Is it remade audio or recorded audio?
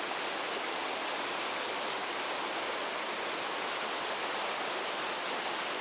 recorded